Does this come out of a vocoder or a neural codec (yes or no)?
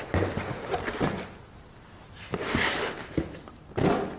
no